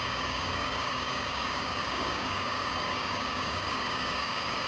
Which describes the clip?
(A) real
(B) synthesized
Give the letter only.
B